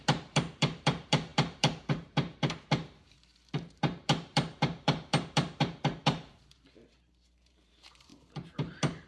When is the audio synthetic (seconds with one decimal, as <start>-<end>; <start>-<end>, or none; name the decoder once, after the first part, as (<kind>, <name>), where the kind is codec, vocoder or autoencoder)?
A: 0.0-9.1 (vocoder, BigVGAN v2)